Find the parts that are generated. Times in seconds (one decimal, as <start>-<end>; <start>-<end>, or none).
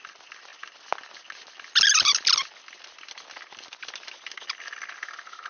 none